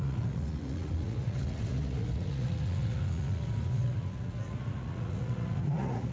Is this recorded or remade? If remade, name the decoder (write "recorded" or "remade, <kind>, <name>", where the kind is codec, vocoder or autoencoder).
remade, vocoder, Vocos